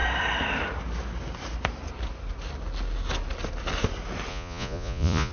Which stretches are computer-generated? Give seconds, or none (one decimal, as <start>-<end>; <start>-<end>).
4.3-5.3

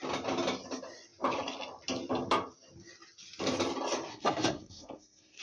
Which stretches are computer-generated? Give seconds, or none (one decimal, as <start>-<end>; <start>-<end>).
4.1-5.4

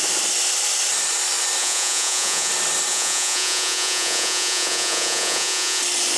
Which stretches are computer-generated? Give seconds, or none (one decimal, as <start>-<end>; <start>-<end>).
1.6-2.5; 2.9-5.8

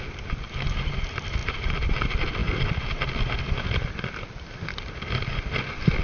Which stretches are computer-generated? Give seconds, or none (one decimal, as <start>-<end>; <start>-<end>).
none

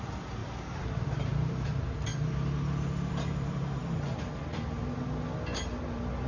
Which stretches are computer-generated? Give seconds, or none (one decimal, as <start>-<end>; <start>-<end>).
0.0-0.4; 1.1-2.1; 3.1-3.8

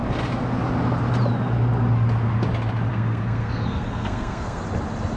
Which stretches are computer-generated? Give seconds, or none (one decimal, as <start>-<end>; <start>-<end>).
2.9-4.6

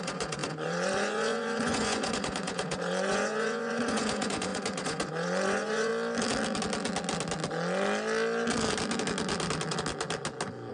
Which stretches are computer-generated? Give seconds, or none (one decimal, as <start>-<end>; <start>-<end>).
0.0-5.9

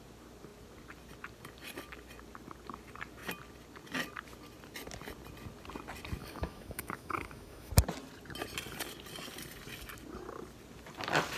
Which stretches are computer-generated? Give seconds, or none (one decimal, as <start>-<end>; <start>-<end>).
6.2-7.7